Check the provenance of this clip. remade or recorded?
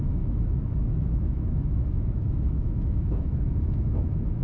remade